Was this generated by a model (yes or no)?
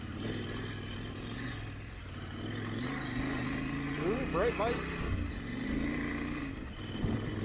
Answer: no